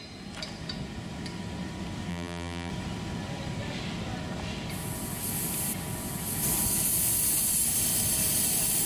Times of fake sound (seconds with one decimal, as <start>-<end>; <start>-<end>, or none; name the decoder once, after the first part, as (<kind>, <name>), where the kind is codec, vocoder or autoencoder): 2.1-2.7 (vocoder, BigVGAN v2)